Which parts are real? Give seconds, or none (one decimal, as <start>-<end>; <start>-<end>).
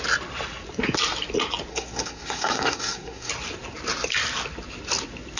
0.0-1.7; 3.3-5.4